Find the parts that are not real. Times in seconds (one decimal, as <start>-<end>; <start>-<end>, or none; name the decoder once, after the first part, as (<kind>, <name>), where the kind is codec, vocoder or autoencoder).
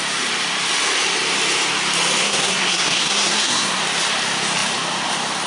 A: 2.2-3.8 (codec, SNAC)